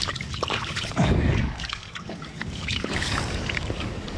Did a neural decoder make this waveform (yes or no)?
yes